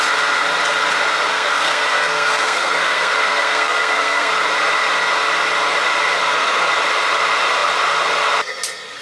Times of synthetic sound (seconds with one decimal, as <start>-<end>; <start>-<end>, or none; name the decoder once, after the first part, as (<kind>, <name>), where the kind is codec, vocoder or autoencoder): 1.3-4.3 (codec, SNAC); 6.2-6.7